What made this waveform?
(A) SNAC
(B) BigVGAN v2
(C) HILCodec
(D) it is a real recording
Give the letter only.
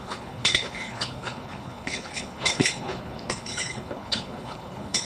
C